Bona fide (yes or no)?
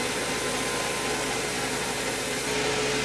yes